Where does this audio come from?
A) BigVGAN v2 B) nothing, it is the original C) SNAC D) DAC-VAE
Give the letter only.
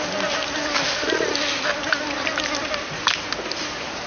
B